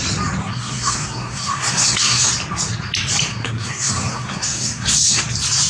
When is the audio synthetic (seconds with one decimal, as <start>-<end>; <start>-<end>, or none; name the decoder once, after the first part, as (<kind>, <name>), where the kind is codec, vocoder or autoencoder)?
0.4-2.3 (codec, SNAC); 3.3-5.2